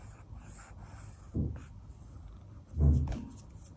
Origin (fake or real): real